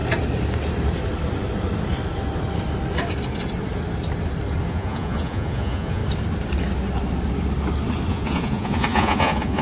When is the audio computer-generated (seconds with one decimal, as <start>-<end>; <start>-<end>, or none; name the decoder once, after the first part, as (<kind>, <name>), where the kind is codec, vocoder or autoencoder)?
4.7-6.0 (vocoder, Vocos); 8.1-9.6